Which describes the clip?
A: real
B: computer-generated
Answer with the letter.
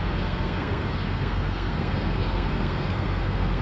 B